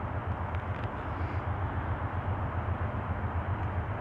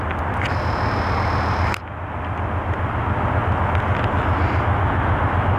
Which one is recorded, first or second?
second